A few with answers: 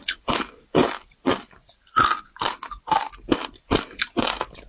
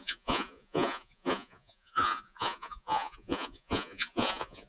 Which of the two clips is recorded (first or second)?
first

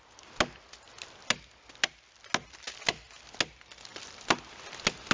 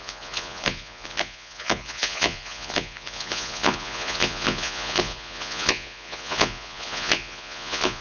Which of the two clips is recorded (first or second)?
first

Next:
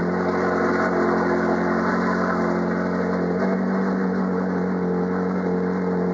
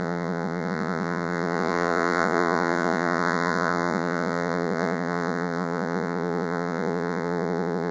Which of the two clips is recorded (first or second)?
first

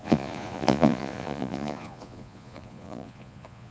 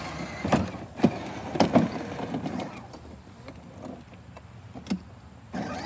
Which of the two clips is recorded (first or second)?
second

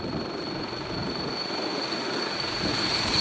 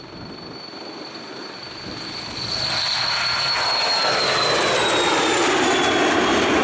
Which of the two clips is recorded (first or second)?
second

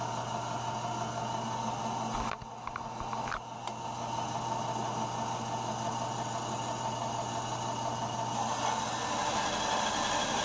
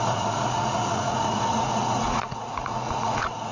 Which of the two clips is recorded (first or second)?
first